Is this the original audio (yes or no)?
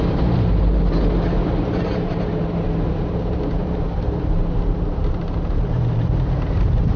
no